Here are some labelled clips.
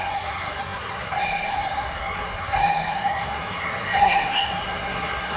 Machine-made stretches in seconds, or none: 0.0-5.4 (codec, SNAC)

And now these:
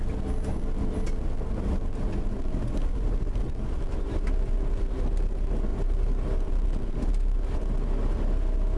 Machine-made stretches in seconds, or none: none

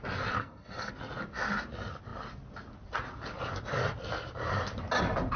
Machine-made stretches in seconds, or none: 0.4-0.9 (codec, SNAC)

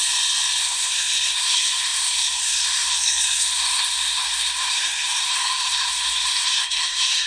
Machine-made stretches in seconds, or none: 0.6-7.3 (codec, SNAC)